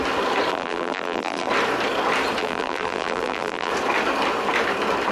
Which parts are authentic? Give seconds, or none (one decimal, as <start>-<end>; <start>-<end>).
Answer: 0.0-0.5; 1.5-2.4; 3.7-5.1